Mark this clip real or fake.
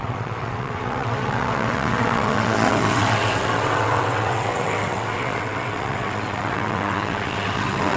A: fake